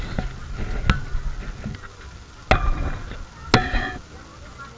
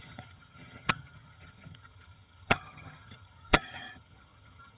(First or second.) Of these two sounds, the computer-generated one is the second